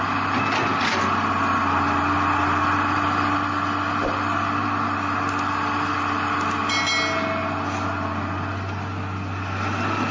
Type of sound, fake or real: real